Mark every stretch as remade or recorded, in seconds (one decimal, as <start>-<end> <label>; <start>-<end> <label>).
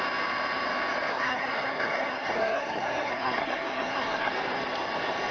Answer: 0.0-1.1 recorded; 1.1-4.3 remade; 4.3-5.3 recorded